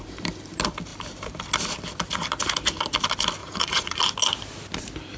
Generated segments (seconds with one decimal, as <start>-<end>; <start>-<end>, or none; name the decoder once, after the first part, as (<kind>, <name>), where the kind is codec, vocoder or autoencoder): 3.4-4.0 (vocoder, Vocos)